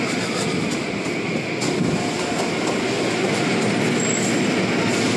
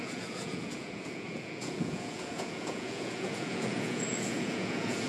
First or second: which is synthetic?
second